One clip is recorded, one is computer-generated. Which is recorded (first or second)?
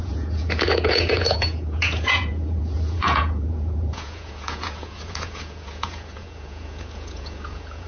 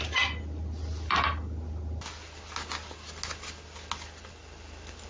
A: second